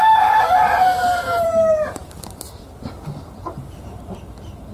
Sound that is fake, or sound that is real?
fake